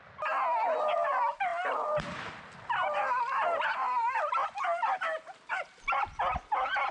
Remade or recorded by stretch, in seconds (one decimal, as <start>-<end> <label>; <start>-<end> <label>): 0.0-6.9 recorded